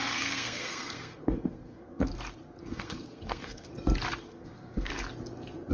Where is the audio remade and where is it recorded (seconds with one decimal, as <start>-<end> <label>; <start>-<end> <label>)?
0.0-2.1 remade; 2.1-2.6 recorded; 2.6-3.7 remade; 3.7-4.2 recorded; 4.2-4.9 remade; 4.9-5.7 recorded